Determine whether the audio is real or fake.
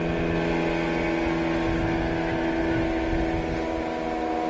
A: real